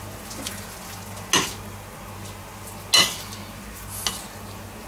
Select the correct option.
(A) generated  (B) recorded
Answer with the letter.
B